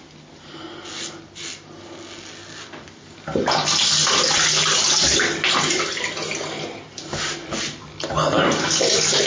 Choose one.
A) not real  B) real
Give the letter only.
B